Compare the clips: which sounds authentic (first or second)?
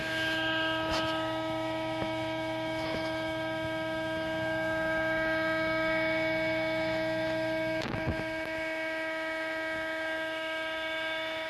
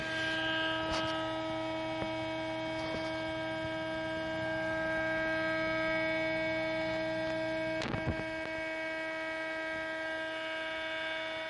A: second